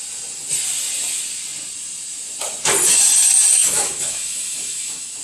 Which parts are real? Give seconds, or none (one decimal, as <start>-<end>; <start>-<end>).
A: 0.0-3.6